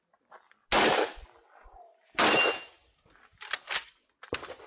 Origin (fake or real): real